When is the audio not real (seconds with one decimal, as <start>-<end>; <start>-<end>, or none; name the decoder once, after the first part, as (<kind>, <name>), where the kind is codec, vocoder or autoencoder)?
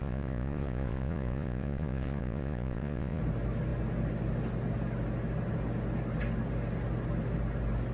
0.0-3.2 (vocoder, Vocos)